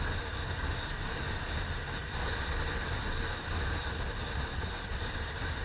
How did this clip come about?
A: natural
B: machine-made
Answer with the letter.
A